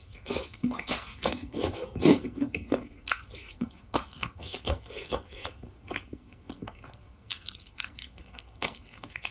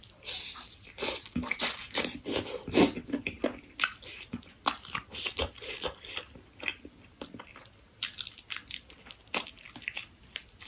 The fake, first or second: first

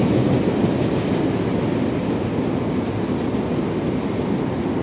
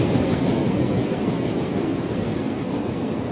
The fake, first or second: second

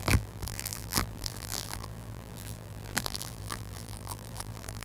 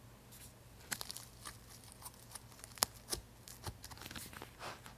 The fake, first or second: first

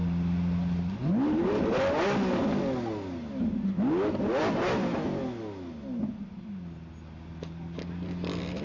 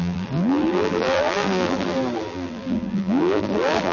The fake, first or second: second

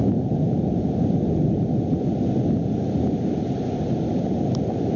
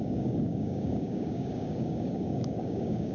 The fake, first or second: second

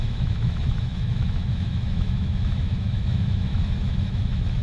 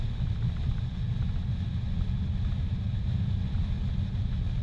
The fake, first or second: first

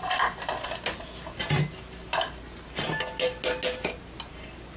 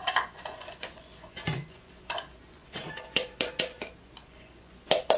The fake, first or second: second